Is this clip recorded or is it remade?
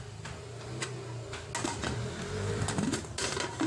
recorded